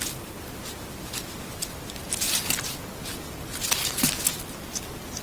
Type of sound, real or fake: real